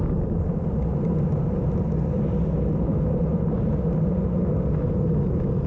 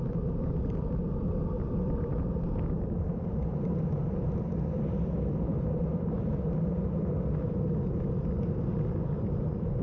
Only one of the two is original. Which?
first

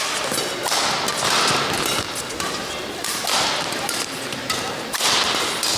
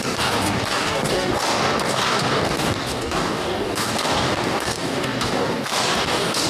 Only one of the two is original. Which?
first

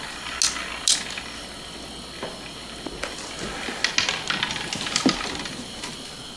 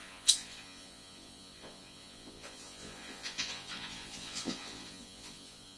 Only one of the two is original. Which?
first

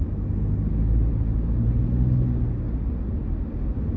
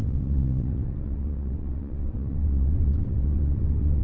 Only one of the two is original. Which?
first